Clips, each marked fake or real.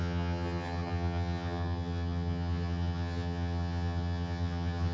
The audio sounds fake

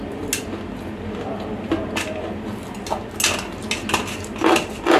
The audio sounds real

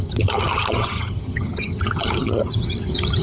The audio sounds fake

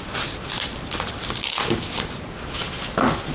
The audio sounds real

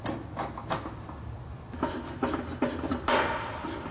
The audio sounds real